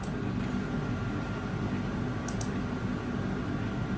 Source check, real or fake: real